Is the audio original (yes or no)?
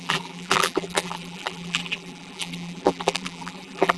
no